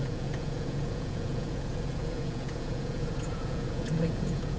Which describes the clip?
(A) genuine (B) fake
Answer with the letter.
B